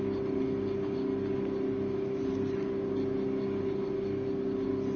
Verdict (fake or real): real